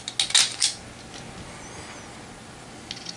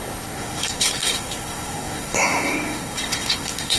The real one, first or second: first